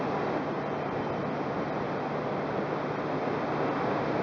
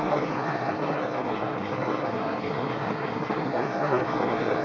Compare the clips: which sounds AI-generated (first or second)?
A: second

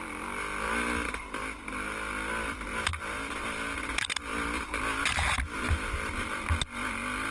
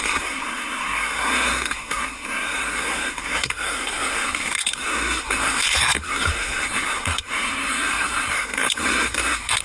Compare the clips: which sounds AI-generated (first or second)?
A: second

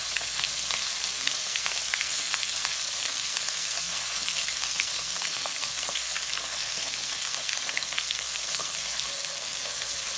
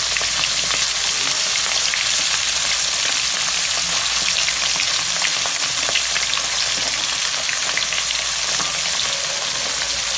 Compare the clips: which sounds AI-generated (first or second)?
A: first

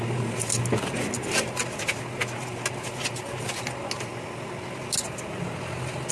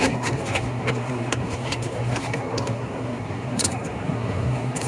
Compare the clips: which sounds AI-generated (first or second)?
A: second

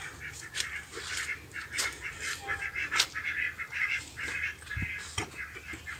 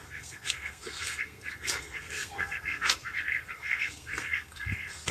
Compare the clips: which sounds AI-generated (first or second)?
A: second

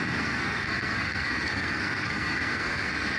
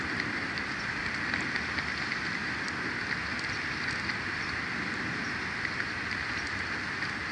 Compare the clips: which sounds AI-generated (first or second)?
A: first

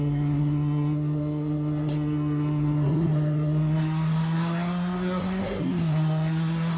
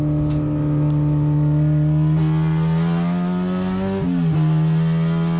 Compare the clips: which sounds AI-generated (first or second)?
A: first